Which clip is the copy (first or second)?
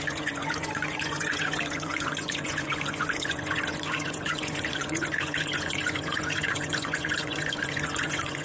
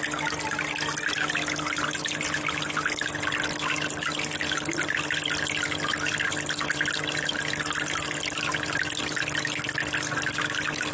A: first